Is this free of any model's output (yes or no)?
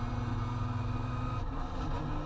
yes